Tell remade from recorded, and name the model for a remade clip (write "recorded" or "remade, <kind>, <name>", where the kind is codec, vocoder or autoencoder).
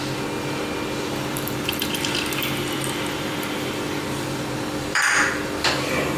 remade, vocoder, BigVGAN v2